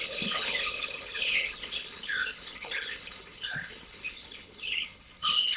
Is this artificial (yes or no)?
yes